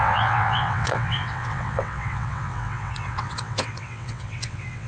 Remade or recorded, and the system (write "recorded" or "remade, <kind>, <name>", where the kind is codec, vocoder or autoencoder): remade, vocoder, WaveNeXt